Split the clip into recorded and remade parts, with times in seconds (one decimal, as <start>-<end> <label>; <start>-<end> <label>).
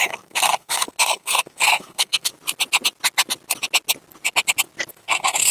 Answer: 0.0-2.3 remade; 2.3-4.9 recorded; 4.9-5.5 remade